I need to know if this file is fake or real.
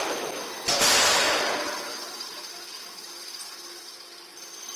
real